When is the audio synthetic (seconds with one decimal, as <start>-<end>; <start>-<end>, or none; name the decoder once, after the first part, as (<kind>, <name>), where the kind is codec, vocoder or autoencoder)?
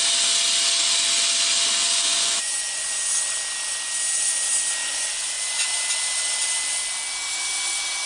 1.8-3.1 (vocoder, Vocos); 4.8-5.4